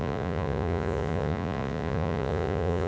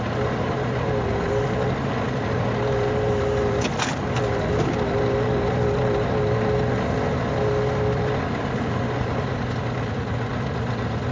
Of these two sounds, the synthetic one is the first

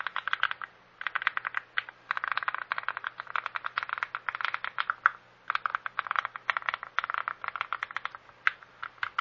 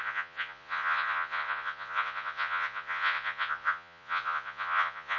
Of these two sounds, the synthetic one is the second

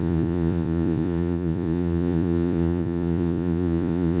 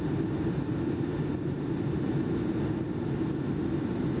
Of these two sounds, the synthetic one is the first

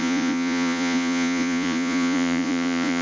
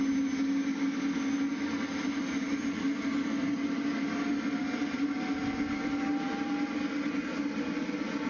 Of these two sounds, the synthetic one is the first